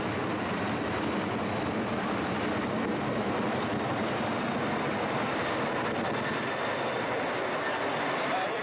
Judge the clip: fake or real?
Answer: real